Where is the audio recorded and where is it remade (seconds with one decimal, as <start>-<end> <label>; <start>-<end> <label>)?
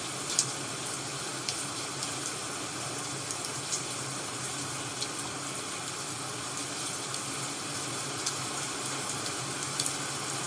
0.0-10.5 recorded